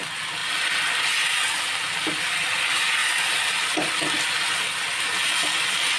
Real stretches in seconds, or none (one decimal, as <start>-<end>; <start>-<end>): 0.0-6.0